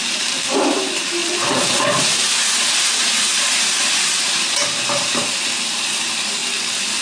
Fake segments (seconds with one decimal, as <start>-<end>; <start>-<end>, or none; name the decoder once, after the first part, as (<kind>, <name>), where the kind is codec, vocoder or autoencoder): 0.0-6.4 (vocoder, BigVGAN v2)